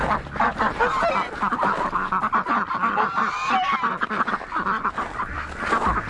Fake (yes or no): no